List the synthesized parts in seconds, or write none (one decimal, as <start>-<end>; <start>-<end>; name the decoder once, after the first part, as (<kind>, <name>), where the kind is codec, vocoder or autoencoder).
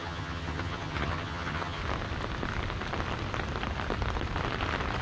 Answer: 0.0-1.8 (vocoder, HiFi-GAN)